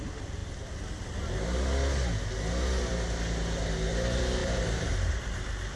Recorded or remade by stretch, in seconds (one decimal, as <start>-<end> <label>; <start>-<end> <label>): 0.0-4.4 recorded; 4.4-5.1 remade; 5.1-5.8 recorded